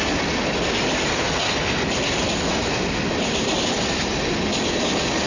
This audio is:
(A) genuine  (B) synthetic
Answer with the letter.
A